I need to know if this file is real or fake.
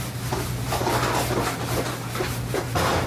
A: real